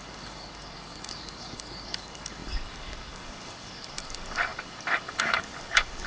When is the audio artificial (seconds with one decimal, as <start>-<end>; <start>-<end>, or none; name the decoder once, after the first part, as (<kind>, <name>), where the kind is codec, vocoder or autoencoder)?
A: 0.0-6.1 (codec, DAC)